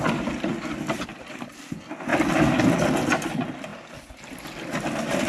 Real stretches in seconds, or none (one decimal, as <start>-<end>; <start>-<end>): 0.0-5.3